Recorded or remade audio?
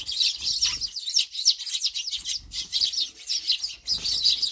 recorded